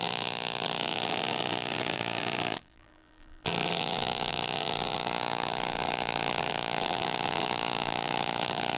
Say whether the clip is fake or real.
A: fake